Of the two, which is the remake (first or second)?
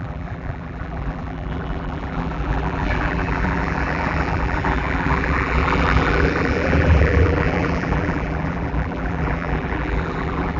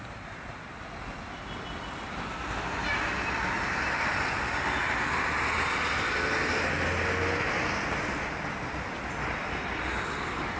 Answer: first